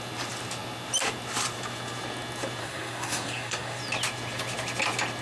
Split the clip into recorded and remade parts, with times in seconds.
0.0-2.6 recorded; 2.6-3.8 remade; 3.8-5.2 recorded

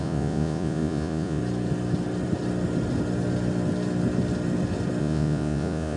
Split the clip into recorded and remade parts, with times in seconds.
0.0-1.4 remade; 1.4-5.0 recorded; 5.0-6.0 remade

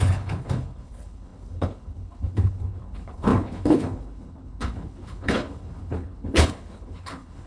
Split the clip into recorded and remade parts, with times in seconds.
0.0-7.5 remade